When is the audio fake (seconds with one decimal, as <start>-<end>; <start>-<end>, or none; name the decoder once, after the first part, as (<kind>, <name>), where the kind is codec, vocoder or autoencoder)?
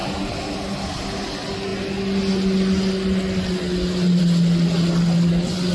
none